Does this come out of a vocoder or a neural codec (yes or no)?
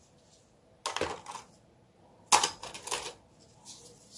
no